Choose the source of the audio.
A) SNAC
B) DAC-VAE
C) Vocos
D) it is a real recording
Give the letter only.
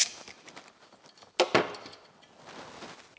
D